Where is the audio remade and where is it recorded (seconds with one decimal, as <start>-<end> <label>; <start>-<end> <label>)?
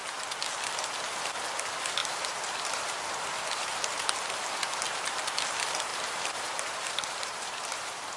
0.0-2.0 recorded; 2.0-5.2 remade; 5.2-5.9 recorded; 5.9-8.2 remade